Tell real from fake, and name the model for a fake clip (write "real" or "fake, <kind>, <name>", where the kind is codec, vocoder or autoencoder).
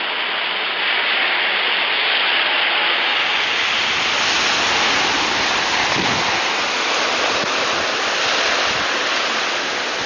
real